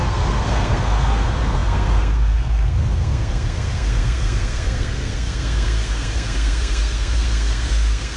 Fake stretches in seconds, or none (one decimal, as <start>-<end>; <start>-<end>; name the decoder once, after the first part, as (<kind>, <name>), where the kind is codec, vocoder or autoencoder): 0.0-8.2 (codec, SNAC)